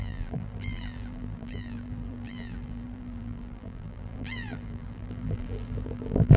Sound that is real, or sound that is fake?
fake